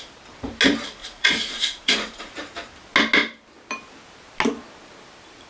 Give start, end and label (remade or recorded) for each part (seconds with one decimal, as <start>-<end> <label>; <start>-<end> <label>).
0.0-1.0 recorded; 1.0-2.3 remade; 2.3-5.5 recorded